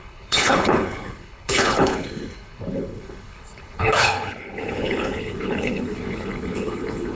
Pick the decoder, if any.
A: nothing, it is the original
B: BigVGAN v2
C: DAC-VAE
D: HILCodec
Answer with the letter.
D